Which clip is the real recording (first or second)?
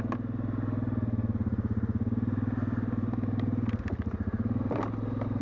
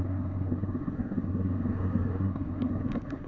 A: first